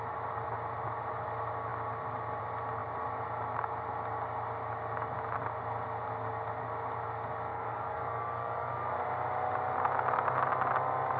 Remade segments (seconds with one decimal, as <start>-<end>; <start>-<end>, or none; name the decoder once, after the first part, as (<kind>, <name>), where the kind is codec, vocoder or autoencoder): 7.5-8.7 (codec, DAC)